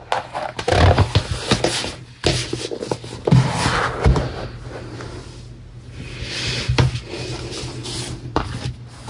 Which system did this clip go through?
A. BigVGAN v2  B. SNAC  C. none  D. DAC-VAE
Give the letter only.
C